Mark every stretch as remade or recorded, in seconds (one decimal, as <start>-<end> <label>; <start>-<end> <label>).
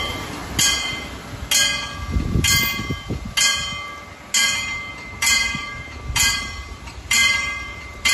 0.0-0.4 remade; 0.4-4.9 recorded; 4.9-8.1 remade